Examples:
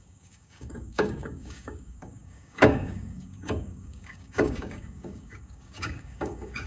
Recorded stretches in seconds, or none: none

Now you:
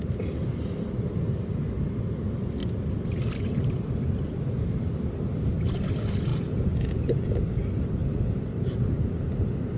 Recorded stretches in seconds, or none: 0.0-6.3; 7.3-9.8

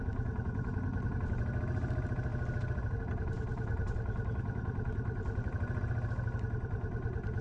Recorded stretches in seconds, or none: 0.0-7.4